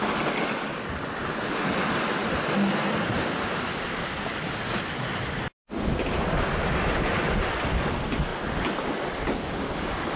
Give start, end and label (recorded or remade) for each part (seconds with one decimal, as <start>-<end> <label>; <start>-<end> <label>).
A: 0.0-10.2 recorded